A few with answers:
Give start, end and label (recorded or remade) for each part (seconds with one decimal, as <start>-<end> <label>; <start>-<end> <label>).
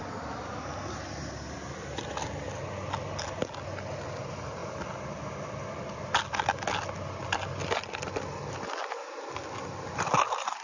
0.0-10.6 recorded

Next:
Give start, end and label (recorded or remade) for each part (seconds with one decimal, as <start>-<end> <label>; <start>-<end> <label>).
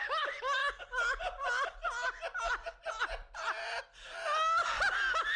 0.0-5.4 recorded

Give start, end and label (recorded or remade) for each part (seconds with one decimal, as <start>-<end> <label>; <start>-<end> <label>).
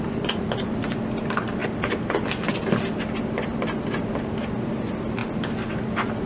0.0-6.3 recorded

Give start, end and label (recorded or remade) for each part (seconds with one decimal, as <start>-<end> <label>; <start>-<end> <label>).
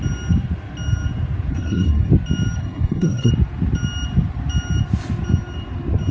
0.0-1.5 recorded; 1.5-2.1 remade; 2.1-2.6 recorded; 2.6-3.3 remade; 3.3-6.1 recorded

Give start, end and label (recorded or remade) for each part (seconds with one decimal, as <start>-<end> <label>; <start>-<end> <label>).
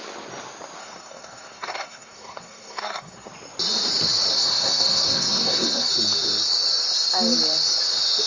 0.0-0.8 recorded; 0.8-3.3 remade; 3.3-4.3 recorded; 4.3-5.9 remade; 5.9-8.3 recorded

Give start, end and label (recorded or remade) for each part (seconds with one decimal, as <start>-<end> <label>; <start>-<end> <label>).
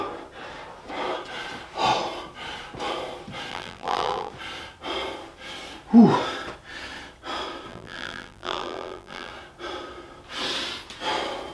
0.0-3.5 recorded; 3.5-4.3 remade; 4.3-7.7 recorded; 7.7-9.3 remade; 9.3-11.5 recorded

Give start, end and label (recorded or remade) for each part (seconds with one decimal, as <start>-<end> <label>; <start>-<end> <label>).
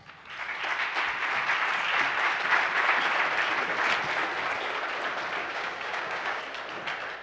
0.0-5.4 recorded; 5.4-6.4 remade; 6.4-7.2 recorded